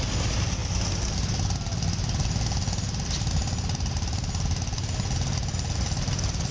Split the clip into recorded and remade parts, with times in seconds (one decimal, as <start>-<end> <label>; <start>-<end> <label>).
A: 0.0-6.5 recorded